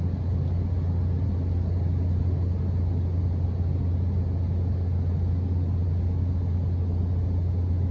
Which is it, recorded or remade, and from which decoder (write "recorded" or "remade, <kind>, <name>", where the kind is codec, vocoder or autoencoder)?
recorded